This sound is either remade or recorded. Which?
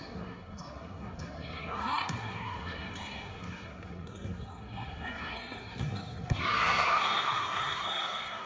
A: remade